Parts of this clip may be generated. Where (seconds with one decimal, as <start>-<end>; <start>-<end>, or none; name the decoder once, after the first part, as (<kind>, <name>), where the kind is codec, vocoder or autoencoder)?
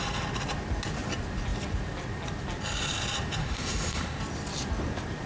3.4-4.2 (autoencoder, DAC-VAE)